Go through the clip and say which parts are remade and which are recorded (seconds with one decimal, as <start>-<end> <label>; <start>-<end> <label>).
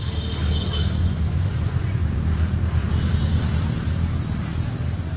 0.0-1.0 recorded; 1.0-2.2 remade; 2.2-5.2 recorded